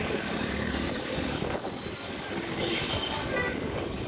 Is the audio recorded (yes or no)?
no